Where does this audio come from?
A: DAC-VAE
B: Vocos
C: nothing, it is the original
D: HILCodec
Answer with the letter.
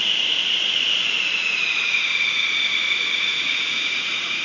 B